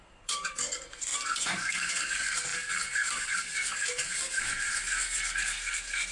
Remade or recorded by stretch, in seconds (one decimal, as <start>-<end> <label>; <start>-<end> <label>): 0.0-6.1 remade